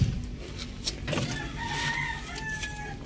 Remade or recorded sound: recorded